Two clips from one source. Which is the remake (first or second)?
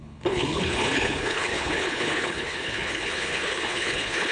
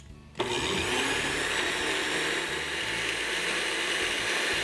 first